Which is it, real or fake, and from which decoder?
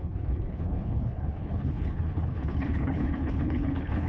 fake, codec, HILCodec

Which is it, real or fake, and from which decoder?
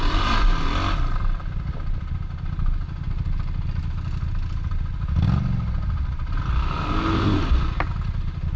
real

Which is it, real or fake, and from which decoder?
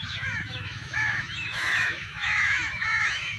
fake, autoencoder, DAC-VAE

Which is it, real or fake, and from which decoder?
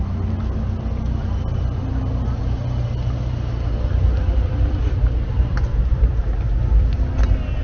real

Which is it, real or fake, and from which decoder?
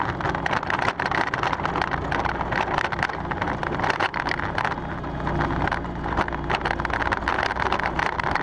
real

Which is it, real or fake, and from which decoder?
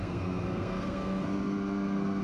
fake, codec, SNAC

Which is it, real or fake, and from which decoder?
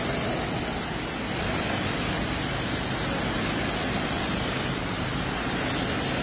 real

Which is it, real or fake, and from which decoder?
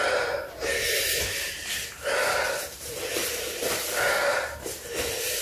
real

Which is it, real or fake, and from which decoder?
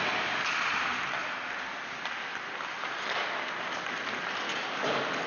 real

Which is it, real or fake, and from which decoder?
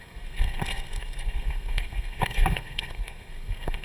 fake, codec, SNAC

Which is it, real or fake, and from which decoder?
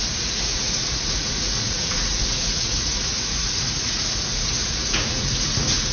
fake, vocoder, Vocos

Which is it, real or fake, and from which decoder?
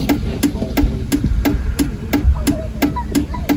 real